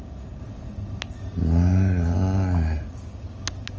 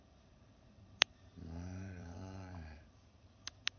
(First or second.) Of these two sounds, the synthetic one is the second